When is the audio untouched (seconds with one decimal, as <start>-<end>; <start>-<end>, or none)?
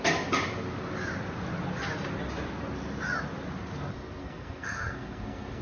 0.0-4.2